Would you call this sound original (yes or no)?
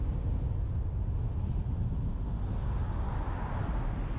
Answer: yes